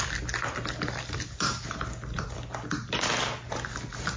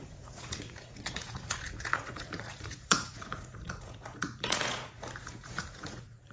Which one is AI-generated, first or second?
second